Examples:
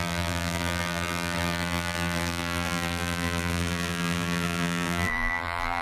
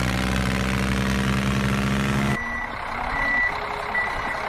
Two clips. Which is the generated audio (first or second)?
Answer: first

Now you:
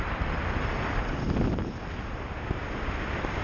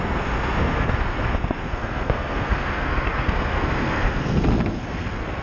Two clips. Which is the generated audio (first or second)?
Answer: second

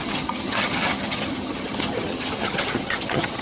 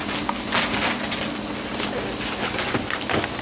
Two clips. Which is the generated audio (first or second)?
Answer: first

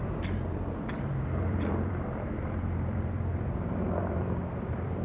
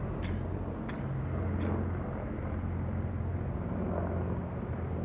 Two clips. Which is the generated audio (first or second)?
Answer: first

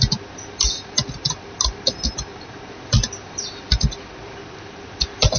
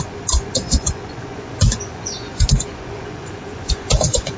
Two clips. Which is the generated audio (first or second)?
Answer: second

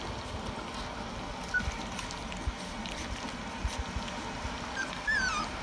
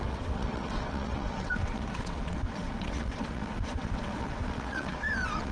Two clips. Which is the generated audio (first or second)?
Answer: second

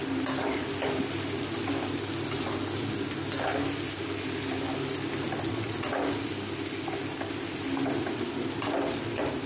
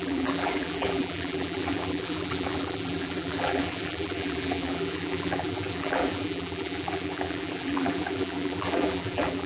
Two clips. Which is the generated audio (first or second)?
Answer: second